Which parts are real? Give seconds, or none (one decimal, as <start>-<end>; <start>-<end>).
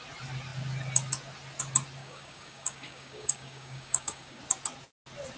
0.0-2.0; 4.4-5.4